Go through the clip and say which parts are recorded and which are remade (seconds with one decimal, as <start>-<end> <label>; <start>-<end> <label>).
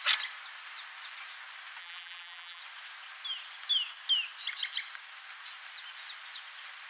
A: 0.0-1.8 recorded; 1.8-2.6 remade; 2.6-6.9 recorded